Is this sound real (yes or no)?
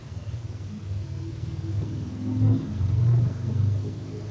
no